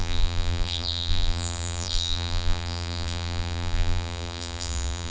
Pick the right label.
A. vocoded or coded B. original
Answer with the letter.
A